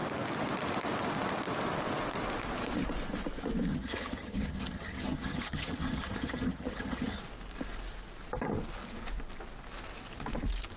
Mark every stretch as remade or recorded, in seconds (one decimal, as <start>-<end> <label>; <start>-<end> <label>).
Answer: 0.0-3.7 recorded; 3.7-7.2 remade; 7.2-10.8 recorded